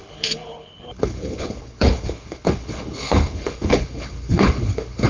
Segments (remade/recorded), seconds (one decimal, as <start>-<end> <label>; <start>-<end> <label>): 0.0-5.1 remade